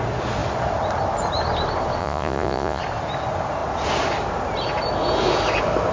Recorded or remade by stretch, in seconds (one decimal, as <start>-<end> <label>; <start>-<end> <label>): 0.0-2.0 recorded; 2.0-2.8 remade; 2.8-5.9 recorded